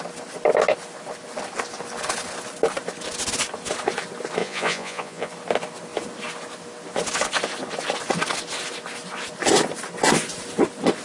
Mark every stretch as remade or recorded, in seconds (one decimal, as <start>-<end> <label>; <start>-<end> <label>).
0.0-4.4 recorded; 4.4-5.3 remade; 5.3-11.0 recorded